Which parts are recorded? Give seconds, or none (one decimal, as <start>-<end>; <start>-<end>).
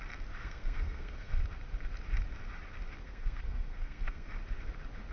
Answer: 0.0-0.4; 1.4-3.0; 4.3-5.1